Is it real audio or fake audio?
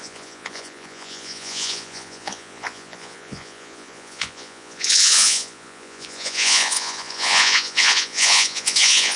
fake